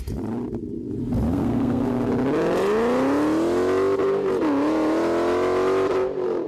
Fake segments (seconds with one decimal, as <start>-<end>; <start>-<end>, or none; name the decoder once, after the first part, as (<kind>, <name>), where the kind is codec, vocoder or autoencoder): 1.3-2.1 (codec, SNAC)